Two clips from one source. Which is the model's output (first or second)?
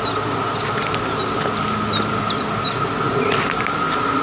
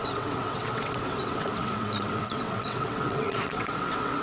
second